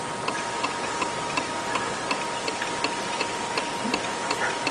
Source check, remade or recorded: recorded